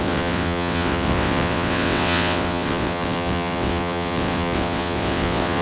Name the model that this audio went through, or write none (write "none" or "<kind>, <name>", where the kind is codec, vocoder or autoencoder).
vocoder, WaveNeXt